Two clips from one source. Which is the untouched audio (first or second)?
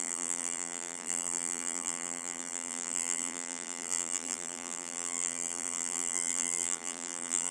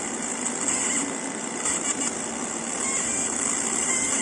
second